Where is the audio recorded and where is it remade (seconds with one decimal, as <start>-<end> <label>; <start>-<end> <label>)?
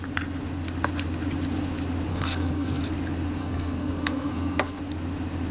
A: 0.0-2.1 recorded; 2.1-2.8 remade; 2.8-3.4 recorded; 3.4-4.8 remade; 4.8-5.5 recorded